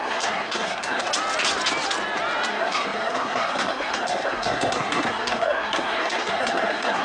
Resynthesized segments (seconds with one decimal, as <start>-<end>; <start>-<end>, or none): 0.0-1.1; 2.5-7.0